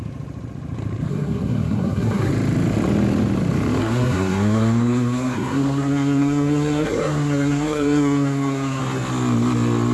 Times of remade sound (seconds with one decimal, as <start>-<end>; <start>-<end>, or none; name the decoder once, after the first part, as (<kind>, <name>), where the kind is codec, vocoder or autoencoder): 1.1-2.3 (codec, SNAC); 3.8-8.8